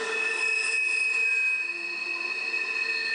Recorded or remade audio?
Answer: recorded